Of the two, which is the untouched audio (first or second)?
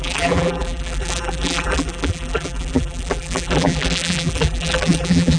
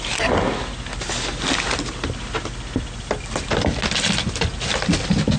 second